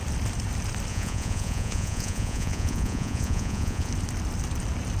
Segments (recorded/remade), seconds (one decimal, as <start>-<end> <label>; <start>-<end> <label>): 0.0-0.9 recorded; 0.9-3.9 remade; 3.9-5.0 recorded